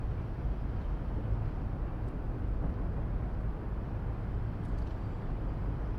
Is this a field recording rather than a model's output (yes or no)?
yes